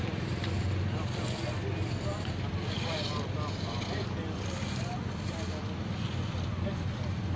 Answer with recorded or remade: recorded